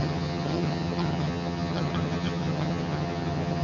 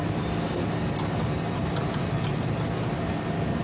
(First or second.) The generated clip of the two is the first